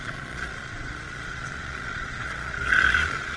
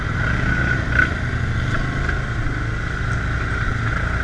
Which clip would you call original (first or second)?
second